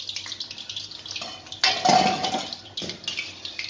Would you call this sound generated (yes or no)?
no